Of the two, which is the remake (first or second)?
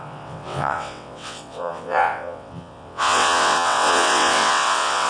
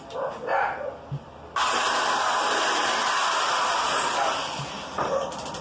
first